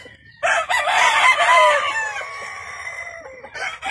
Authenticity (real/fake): real